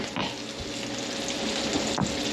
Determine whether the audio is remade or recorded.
recorded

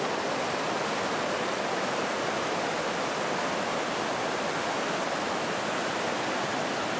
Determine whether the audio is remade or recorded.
recorded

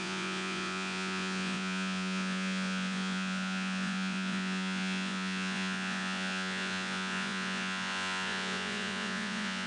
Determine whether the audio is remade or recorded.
remade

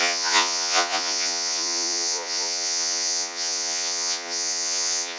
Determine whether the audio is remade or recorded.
remade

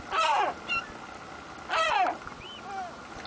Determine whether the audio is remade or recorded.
recorded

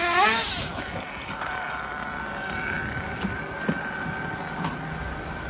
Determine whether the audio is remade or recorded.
recorded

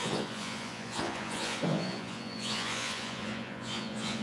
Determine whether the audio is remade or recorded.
remade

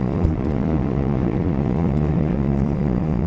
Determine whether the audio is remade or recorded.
remade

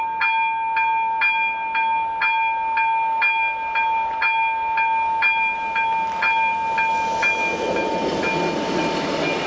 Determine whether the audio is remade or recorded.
recorded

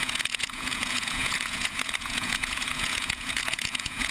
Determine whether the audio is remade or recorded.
remade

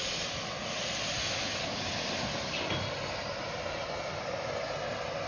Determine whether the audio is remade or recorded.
recorded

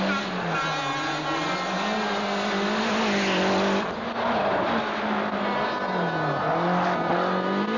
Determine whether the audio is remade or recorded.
recorded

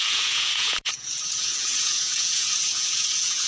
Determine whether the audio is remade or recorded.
remade